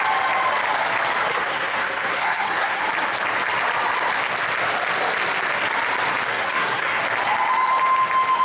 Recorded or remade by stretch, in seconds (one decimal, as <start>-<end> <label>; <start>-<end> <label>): 0.0-1.3 recorded; 1.3-2.8 remade; 2.8-6.3 recorded; 6.3-7.0 remade; 7.0-8.4 recorded